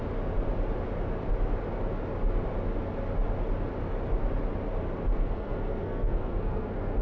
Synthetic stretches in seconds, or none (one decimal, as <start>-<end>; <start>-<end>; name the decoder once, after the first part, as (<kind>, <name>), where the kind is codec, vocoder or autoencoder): 5.1-7.0 (codec, SNAC)